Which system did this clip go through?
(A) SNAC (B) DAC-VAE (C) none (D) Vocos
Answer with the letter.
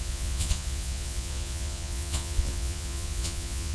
D